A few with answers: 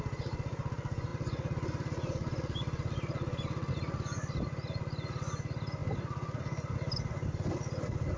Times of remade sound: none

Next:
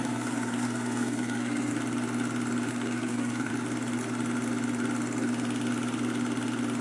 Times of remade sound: 0.0-1.7 (codec, SNAC); 2.7-3.5

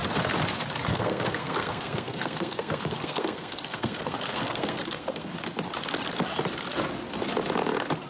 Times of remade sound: 0.9-5.3 (codec, SNAC)

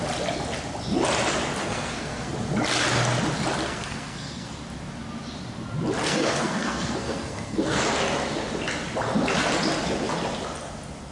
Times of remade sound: 1.6-2.3 (codec, SNAC); 3.6-4.5; 6.0-7.8

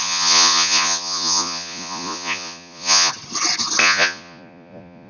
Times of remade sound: 0.0-3.1 (vocoder, Vocos); 3.8-5.1

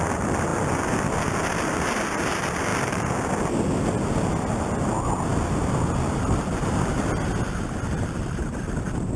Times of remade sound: none

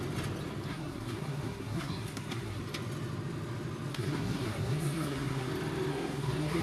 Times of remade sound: 0.7-2.6 (codec, SNAC); 3.9-5.5; 5.9-6.6

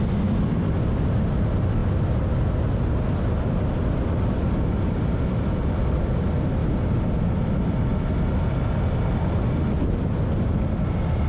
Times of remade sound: none